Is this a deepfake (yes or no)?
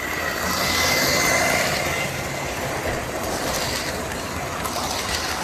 no